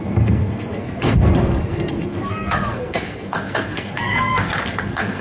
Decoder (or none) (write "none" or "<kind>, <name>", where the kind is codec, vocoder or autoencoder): codec, SNAC